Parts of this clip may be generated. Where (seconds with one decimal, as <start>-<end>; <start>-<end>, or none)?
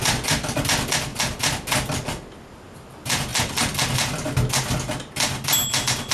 none